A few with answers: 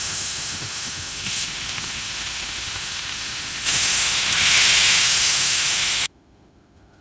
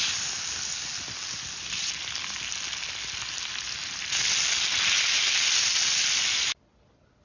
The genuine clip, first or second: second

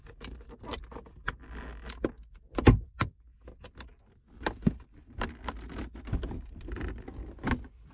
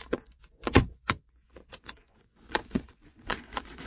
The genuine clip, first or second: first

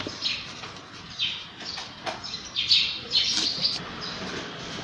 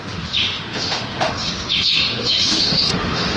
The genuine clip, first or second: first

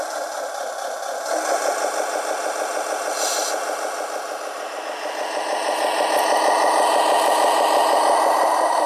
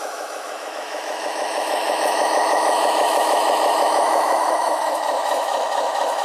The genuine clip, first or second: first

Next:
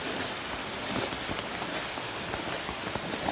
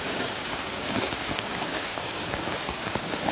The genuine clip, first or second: first